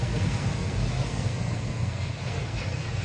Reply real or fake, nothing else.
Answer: fake